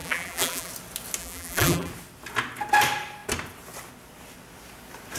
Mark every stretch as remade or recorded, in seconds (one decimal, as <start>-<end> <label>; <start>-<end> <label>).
0.0-0.7 remade; 0.7-1.2 recorded; 1.2-1.9 remade; 1.9-5.2 recorded